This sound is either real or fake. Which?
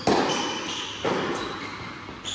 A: real